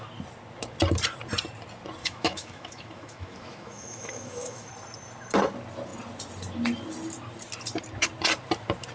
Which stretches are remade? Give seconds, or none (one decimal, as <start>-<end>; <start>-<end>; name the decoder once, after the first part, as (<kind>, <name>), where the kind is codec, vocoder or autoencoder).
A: 2.0-4.7 (autoencoder, DAC-VAE)